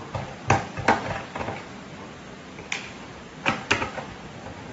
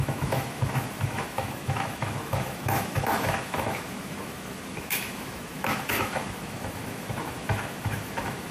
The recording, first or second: first